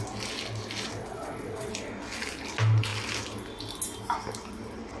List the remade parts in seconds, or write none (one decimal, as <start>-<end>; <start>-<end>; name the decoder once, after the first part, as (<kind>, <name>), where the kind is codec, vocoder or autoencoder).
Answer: 1.0-1.7 (vocoder, WaveNeXt)